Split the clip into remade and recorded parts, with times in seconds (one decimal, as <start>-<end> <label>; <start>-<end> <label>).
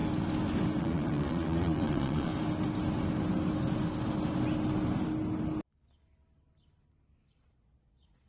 0.0-0.8 recorded; 0.8-2.3 remade; 2.3-7.3 recorded; 7.3-8.3 remade